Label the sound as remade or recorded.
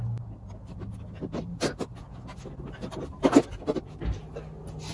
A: recorded